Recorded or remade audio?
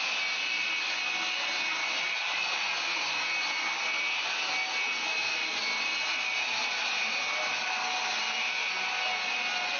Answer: recorded